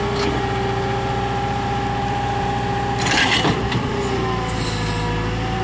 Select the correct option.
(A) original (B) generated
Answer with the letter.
A